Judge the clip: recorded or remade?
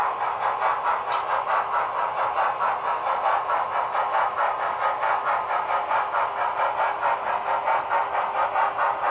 recorded